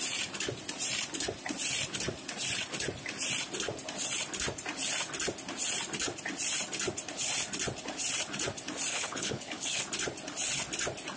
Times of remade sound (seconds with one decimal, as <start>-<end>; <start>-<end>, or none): 8.9-9.8